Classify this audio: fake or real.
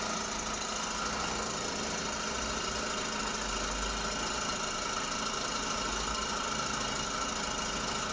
real